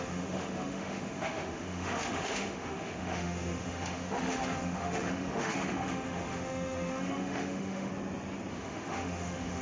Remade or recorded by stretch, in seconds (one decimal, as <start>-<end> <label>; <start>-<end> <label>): 0.0-7.9 remade; 7.9-8.5 recorded; 8.5-9.6 remade